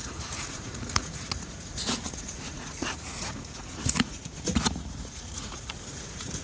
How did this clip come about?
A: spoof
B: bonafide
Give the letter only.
A